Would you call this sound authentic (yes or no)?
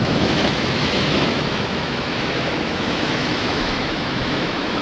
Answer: no